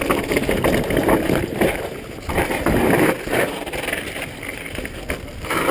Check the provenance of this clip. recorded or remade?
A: recorded